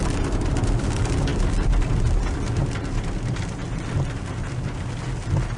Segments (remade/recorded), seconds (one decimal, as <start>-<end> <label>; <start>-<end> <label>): 0.0-5.6 recorded